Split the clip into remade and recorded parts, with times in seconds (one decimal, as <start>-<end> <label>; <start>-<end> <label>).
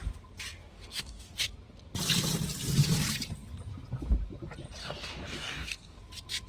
0.0-0.7 recorded; 0.7-1.5 remade; 1.5-4.8 recorded; 4.8-6.0 remade; 6.0-6.5 recorded